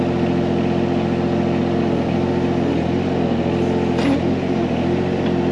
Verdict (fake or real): real